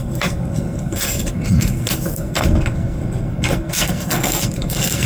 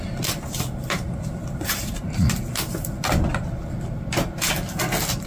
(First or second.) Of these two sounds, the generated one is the first